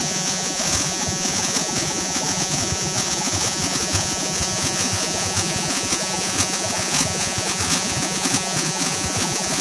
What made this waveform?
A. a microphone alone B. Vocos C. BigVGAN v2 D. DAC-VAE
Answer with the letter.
B